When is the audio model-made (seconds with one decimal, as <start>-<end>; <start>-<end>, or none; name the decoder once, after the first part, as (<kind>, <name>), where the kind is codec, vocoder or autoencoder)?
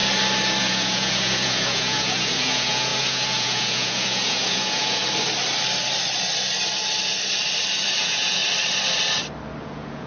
0.6-5.0 (vocoder, Vocos); 8.0-8.4; 9.6-10.1